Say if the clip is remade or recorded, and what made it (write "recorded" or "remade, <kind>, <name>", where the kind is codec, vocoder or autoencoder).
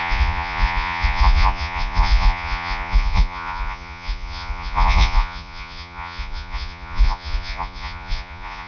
remade, vocoder, Vocos